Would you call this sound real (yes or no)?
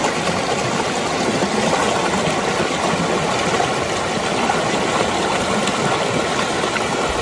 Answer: yes